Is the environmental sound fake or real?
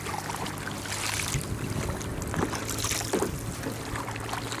real